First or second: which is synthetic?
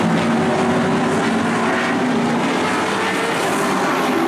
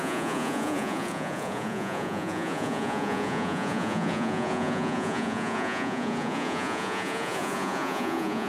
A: second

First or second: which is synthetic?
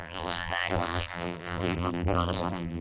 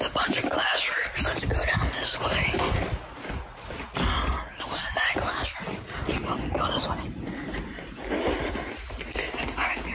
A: first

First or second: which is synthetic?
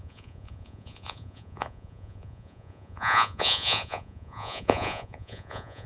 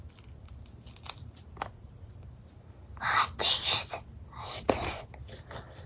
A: first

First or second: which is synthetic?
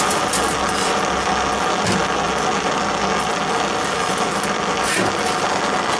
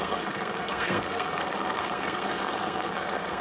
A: second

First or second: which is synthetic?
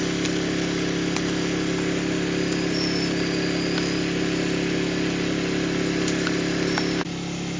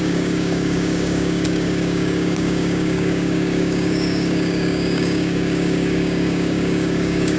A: second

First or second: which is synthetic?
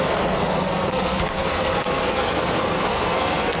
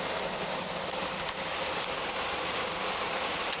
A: first